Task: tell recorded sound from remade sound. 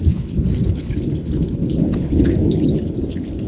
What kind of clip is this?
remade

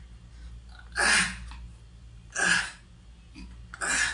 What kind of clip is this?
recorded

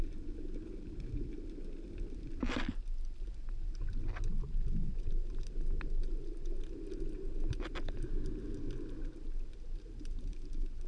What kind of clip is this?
recorded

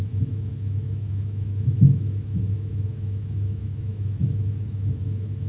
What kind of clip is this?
remade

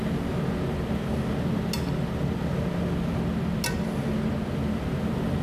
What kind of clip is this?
recorded